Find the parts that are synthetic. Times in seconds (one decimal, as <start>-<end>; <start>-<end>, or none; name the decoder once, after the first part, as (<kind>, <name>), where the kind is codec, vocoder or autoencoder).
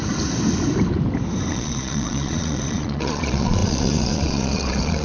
1.5-5.0 (vocoder, Vocos)